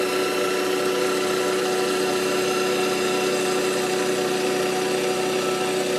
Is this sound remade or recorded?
recorded